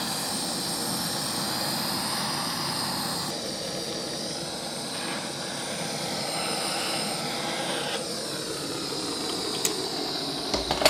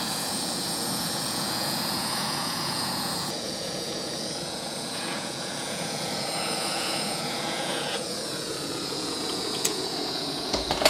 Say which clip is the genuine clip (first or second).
first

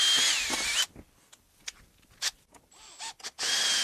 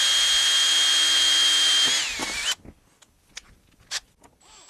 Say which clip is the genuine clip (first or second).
second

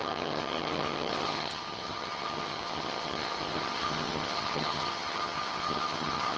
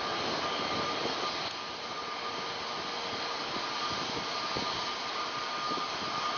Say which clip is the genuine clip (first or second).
second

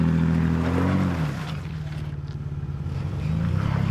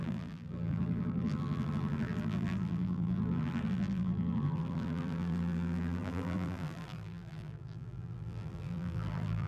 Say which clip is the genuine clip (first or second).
first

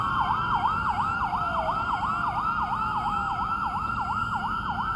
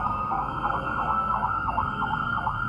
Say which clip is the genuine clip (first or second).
first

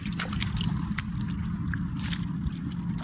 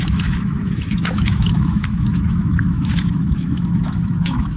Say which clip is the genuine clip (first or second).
first